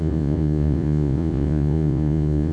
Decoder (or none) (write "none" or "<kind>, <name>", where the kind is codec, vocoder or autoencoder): vocoder, Vocos